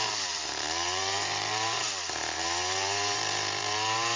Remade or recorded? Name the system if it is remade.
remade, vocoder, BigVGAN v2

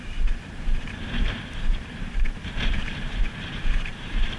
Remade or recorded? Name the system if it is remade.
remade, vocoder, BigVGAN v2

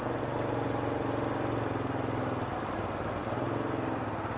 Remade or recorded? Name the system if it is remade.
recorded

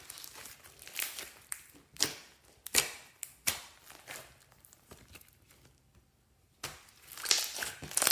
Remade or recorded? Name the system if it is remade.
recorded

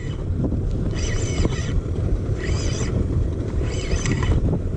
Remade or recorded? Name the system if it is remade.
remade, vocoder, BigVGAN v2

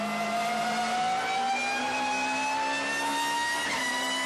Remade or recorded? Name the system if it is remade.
recorded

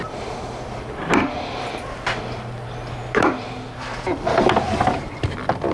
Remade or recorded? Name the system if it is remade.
remade, vocoder, BigVGAN v2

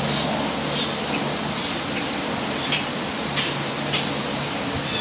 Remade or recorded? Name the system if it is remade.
recorded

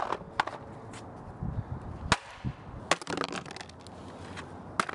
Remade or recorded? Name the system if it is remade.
recorded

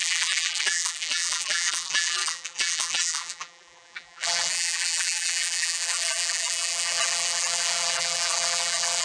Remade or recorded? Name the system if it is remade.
remade, vocoder, BigVGAN v2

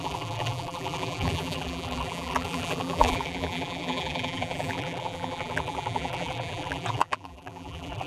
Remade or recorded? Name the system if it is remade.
remade, vocoder, BigVGAN v2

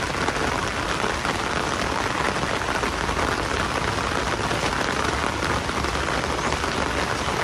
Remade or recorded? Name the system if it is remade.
recorded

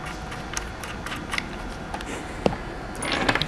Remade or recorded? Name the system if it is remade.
recorded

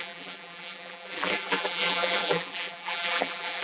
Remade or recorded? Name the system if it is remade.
remade, vocoder, BigVGAN v2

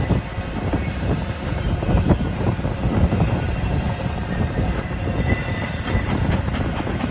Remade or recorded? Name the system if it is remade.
remade, vocoder, BigVGAN v2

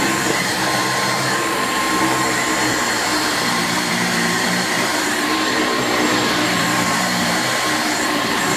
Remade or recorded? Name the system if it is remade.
remade, vocoder, BigVGAN v2